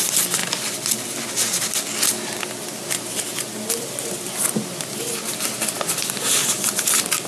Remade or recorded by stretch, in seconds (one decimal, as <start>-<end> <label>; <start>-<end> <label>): 0.0-6.4 recorded; 6.4-7.3 remade